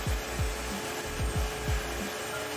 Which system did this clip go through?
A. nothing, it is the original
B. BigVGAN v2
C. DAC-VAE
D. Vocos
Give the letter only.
A